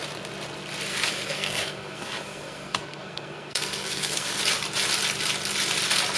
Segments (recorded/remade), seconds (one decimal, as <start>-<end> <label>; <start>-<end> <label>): 0.0-0.9 recorded; 0.9-4.4 remade; 4.4-6.2 recorded